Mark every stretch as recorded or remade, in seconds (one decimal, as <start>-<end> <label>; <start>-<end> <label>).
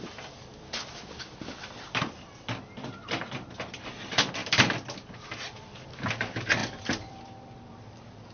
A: 0.0-8.3 remade